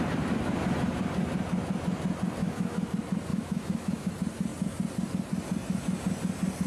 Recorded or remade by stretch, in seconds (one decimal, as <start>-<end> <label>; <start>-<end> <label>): 0.0-2.4 recorded; 2.4-2.9 remade; 2.9-3.3 recorded; 3.3-4.1 remade; 4.1-6.7 recorded